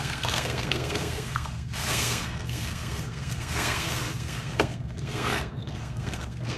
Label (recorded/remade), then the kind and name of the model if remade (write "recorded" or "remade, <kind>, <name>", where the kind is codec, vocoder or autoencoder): remade, codec, SNAC